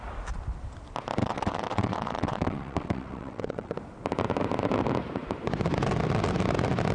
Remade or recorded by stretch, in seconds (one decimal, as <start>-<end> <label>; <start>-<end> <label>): 0.0-1.2 recorded; 1.2-3.7 remade; 3.7-6.9 recorded